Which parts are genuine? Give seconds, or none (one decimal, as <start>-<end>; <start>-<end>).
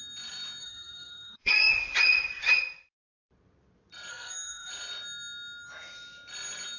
0.0-0.6; 1.7-4.1; 4.7-6.8